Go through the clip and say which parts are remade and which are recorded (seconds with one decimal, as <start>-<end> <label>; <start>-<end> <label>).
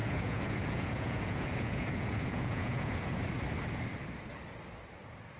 0.0-3.2 remade; 3.2-5.4 recorded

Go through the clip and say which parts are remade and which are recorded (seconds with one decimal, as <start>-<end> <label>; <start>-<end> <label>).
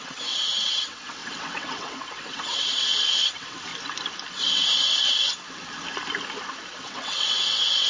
0.0-3.7 remade; 3.7-4.3 recorded; 4.3-5.3 remade; 5.3-6.7 recorded; 6.7-7.9 remade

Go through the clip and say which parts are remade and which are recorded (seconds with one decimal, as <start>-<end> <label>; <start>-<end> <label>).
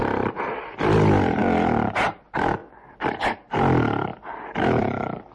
0.0-5.3 recorded